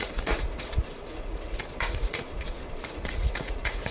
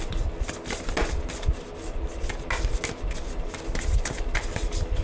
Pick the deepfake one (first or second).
first